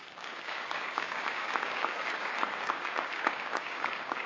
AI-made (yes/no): yes